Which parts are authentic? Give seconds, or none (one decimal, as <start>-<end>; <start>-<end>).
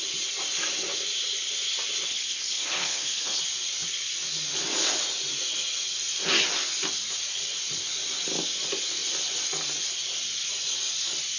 0.0-2.1; 3.4-11.4